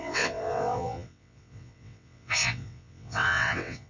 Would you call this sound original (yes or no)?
no